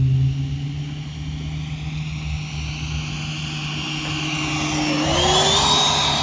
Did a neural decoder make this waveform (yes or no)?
no